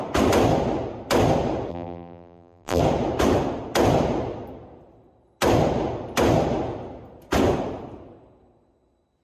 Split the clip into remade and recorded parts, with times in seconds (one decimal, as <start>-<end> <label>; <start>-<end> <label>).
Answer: 0.0-1.7 recorded; 1.7-2.8 remade; 2.8-9.2 recorded